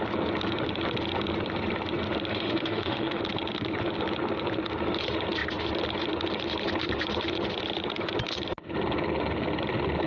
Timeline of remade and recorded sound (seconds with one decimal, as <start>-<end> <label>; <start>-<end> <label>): 0.0-2.3 recorded; 2.3-3.2 remade; 3.2-10.1 recorded